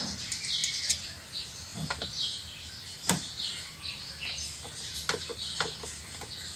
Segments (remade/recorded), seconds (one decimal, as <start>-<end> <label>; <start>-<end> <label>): 0.0-6.6 recorded

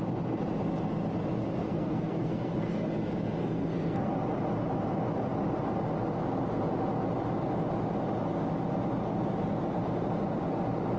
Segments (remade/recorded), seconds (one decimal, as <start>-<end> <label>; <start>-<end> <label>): 0.0-1.6 recorded; 1.6-2.9 remade; 2.9-3.4 recorded; 3.4-4.1 remade; 4.1-11.0 recorded

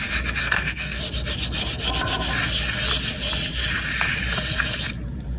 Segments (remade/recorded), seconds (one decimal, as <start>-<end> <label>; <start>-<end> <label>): 0.0-0.4 recorded; 0.4-1.0 remade; 1.0-5.4 recorded

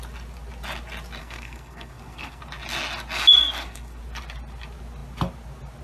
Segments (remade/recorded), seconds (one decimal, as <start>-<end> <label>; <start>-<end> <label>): 0.0-1.2 recorded; 1.2-2.4 remade; 2.4-3.4 recorded; 3.4-4.0 remade; 4.0-5.8 recorded

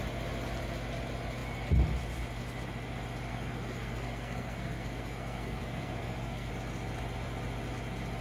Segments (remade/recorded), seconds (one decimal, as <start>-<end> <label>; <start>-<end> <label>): 0.0-3.3 recorded; 3.3-6.5 remade; 6.5-8.2 recorded

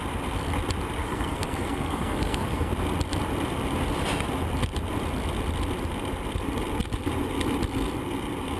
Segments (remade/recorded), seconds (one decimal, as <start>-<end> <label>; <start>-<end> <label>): 0.0-1.0 recorded; 1.0-2.7 remade; 2.7-8.6 recorded

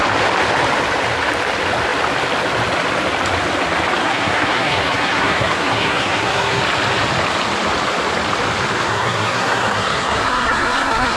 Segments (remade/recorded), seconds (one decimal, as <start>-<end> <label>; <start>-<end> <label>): 0.0-4.0 recorded; 4.0-6.6 remade; 6.6-8.9 recorded; 8.9-11.2 remade

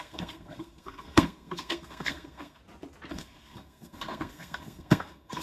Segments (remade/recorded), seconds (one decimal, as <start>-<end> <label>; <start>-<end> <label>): 0.0-2.6 remade; 2.6-3.1 recorded; 3.1-5.4 remade